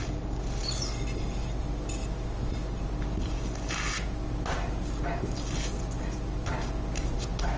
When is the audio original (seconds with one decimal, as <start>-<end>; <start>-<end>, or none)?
0.0-7.6